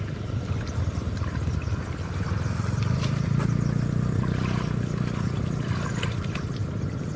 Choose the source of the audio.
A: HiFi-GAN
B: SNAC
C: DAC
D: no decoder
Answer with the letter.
D